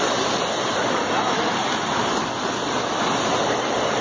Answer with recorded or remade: recorded